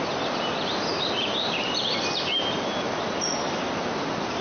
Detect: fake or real real